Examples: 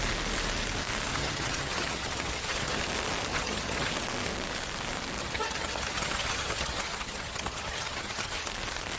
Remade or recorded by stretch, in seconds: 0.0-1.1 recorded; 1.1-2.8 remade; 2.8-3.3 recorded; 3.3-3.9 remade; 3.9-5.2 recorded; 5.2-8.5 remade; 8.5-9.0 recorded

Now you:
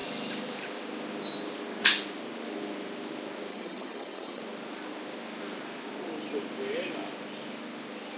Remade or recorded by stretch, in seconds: 0.0-3.5 recorded; 3.5-4.4 remade; 4.4-8.2 recorded

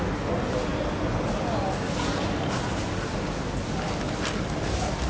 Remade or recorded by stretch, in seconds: 0.0-5.1 recorded